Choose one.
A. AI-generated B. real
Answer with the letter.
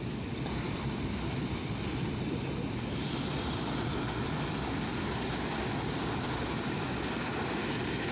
B